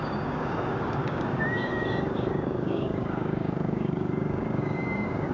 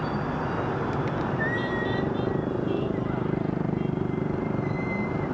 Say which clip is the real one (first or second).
second